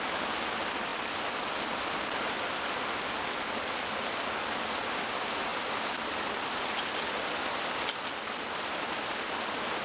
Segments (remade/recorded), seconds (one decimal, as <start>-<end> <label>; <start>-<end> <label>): 0.0-5.5 recorded; 5.5-9.0 remade; 9.0-9.8 recorded